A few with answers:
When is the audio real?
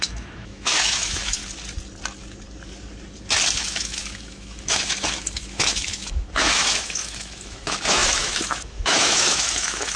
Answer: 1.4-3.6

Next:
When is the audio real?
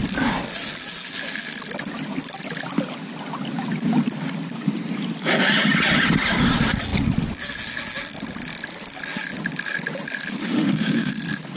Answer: 0.0-10.4; 11.1-11.6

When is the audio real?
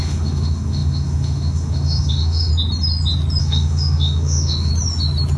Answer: 2.5-3.4; 4.7-5.4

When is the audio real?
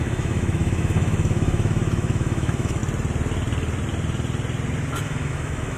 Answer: 2.8-5.0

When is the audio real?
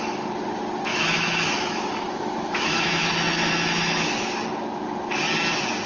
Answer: 0.0-0.9; 4.4-5.9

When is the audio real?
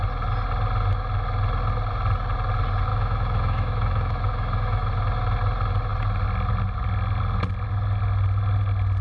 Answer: 0.0-2.9; 4.9-9.0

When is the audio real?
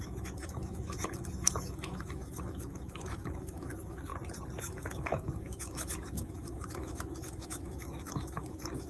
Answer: 4.1-4.6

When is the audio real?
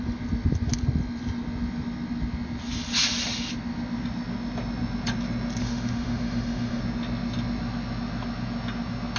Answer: 0.0-5.6; 6.8-9.2